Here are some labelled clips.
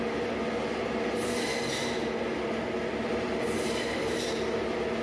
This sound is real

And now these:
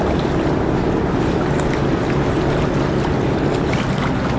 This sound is real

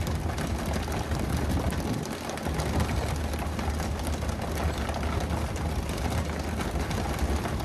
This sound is real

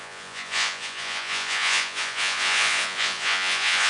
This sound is fake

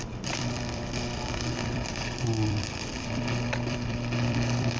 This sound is fake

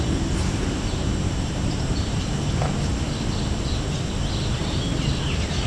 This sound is fake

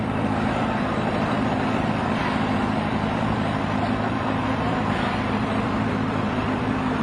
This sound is fake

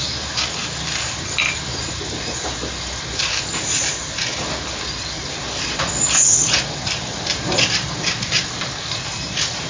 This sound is real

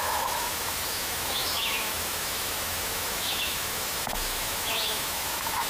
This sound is fake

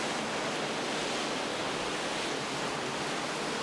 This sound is real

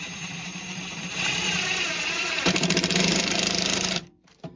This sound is fake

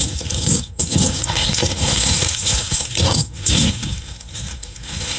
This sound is fake